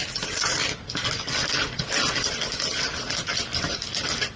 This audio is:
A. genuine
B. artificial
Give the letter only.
A